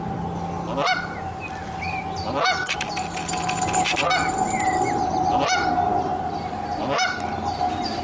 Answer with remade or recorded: recorded